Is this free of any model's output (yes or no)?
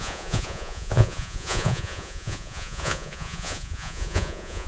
no